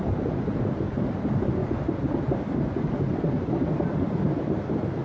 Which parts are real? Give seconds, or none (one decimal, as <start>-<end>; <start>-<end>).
0.0-5.0